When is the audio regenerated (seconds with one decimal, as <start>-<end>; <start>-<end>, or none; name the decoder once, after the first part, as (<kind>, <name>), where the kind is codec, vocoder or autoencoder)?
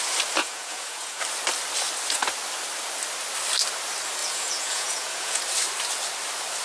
0.4-1.2 (vocoder, Vocos); 4.2-5.4